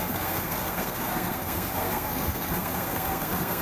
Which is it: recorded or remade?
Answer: remade